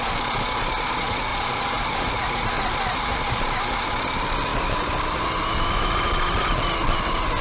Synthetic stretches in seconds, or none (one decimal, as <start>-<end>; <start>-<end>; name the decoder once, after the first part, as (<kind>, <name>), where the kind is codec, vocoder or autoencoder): 1.3-3.9 (vocoder, BigVGAN v2)